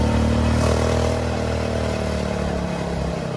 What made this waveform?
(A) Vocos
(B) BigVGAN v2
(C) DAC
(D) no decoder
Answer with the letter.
D